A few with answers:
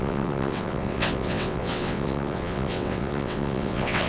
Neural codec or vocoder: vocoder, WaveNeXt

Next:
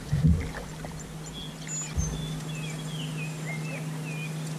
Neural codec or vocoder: none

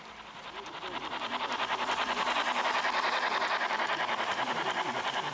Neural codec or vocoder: vocoder, BigVGAN v2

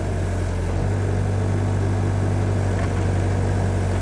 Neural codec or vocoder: none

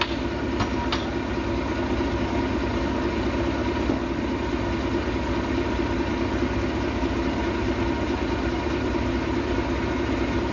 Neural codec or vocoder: none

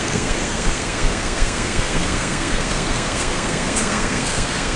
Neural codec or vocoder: codec, SNAC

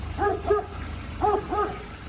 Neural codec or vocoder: vocoder, Vocos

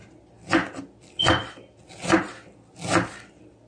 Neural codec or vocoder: none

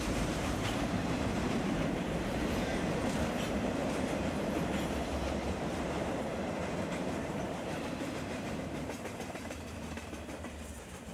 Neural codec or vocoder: vocoder, BigVGAN v2